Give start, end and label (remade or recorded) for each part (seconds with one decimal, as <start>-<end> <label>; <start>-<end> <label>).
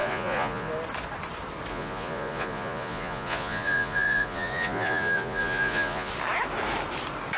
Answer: 0.0-0.7 remade; 0.7-1.7 recorded; 1.7-6.1 remade; 6.1-7.4 recorded